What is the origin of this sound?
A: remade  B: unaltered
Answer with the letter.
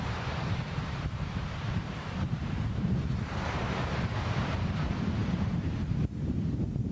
A